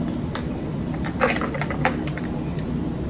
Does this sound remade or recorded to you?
recorded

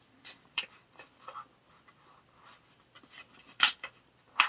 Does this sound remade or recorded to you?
recorded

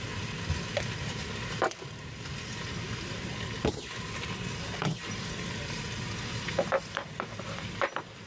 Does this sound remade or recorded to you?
recorded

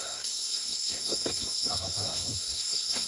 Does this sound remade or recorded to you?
remade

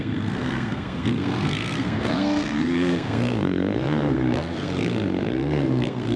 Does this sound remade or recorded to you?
remade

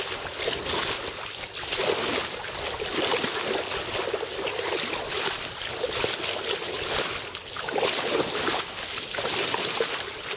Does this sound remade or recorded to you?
recorded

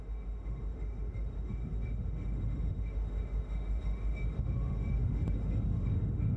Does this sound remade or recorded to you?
remade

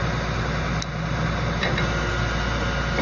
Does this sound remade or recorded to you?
recorded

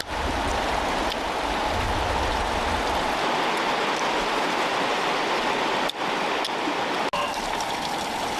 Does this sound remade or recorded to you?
recorded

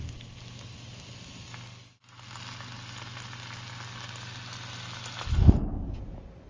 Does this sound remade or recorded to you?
recorded